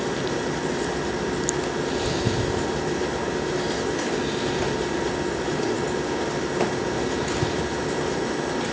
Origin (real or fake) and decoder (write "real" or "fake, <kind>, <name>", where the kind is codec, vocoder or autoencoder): real